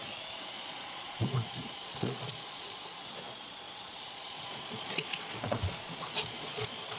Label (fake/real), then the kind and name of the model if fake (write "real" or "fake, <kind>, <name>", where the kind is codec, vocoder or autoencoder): fake, vocoder, Vocos